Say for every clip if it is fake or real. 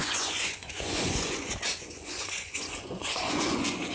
fake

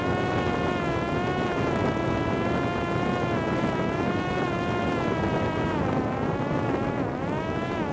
real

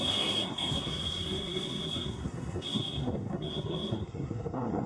fake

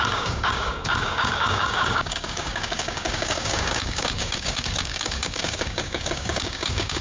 fake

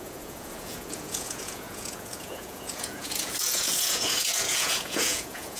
fake